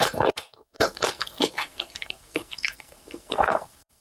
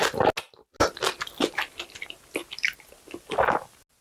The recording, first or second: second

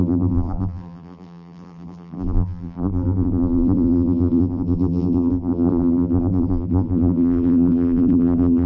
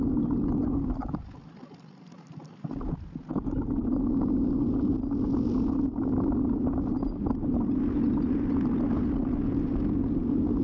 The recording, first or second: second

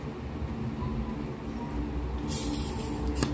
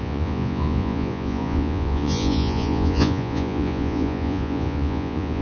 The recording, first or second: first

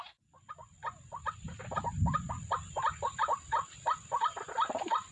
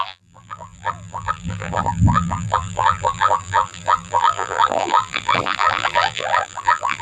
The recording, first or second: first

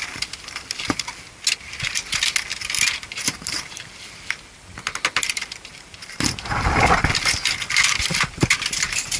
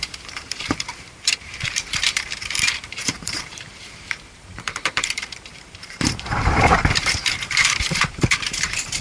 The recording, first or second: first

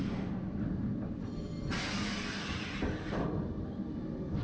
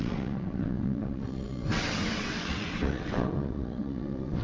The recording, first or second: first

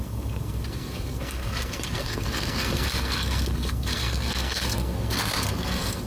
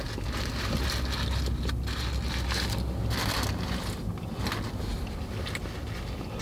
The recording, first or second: second